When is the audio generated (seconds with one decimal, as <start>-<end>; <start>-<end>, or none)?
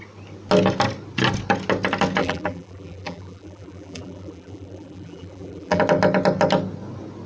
2.2-5.8